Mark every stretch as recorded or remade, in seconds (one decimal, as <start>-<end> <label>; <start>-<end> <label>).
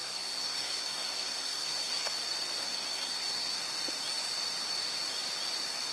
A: 0.0-2.2 remade; 2.2-2.6 recorded; 2.6-3.6 remade; 3.6-5.9 recorded